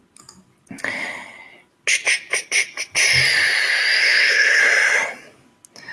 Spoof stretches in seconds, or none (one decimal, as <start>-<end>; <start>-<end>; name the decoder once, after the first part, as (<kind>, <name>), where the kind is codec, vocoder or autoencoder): 4.0-4.6 (codec, HILCodec)